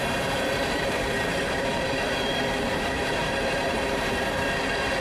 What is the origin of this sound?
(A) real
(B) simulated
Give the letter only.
B